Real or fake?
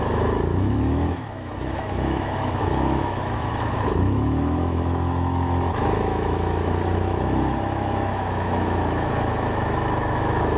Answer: fake